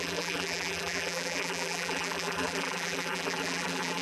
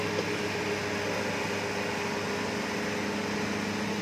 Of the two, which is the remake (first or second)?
first